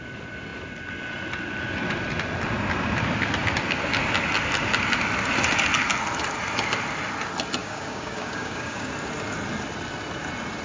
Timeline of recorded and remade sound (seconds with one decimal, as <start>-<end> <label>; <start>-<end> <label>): 0.0-7.6 recorded; 7.6-8.9 remade; 8.9-10.6 recorded